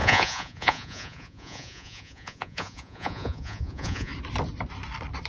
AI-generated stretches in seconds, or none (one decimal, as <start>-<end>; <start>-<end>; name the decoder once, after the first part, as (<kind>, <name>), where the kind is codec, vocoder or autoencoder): 0.0-4.1 (vocoder, Vocos)